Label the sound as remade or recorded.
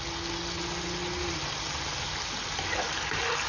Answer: recorded